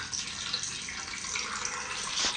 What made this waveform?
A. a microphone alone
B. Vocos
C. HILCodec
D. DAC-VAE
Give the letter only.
A